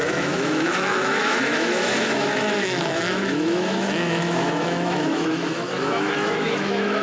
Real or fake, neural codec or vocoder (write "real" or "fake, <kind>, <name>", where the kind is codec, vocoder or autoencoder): fake, autoencoder, DAC-VAE